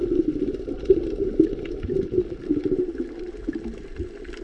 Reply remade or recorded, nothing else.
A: recorded